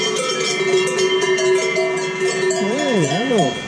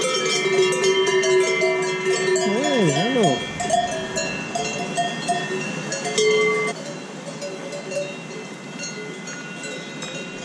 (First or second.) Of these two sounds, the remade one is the first